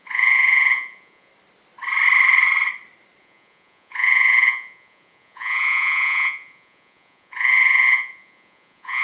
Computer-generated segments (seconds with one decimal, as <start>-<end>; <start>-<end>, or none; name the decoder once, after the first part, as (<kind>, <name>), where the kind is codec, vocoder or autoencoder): 0.0-1.3 (vocoder, Vocos); 3.2-9.0